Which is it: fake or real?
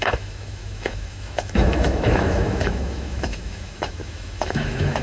fake